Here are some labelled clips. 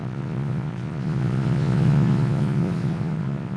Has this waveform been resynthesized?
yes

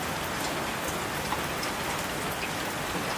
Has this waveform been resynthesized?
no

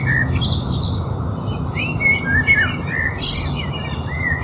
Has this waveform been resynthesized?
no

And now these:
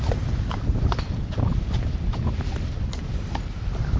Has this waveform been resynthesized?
no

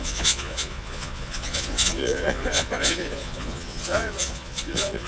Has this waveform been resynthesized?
yes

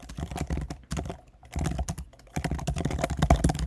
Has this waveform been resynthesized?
no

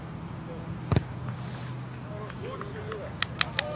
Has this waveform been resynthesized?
no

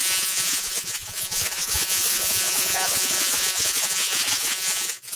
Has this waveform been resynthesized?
yes